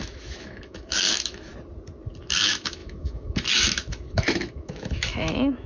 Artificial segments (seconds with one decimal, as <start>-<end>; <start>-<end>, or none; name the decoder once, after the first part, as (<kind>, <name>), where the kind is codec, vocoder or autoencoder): 0.0-1.5 (autoencoder, DAC-VAE); 2.2-5.7